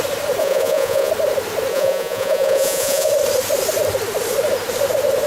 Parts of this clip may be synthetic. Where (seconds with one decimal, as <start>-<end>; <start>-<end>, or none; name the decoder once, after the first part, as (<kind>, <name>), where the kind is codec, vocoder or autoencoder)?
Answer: 0.4-1.1 (vocoder, Vocos); 1.7-3.1